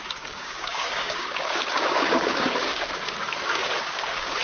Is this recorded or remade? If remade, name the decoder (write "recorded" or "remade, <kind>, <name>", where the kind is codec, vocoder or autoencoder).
remade, codec, DAC